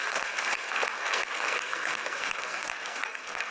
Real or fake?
fake